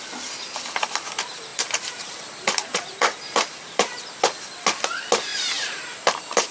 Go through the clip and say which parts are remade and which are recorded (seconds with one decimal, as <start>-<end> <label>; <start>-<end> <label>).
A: 0.0-1.5 recorded; 1.5-4.0 remade; 4.0-5.3 recorded; 5.3-6.5 remade